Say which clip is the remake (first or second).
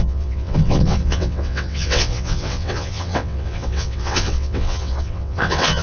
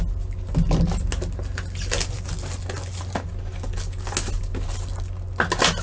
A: first